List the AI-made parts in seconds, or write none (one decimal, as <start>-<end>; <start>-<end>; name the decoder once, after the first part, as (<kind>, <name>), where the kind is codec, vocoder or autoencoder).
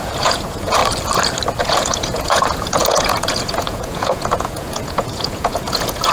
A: 0.0-0.8 (vocoder, Vocos); 1.6-6.1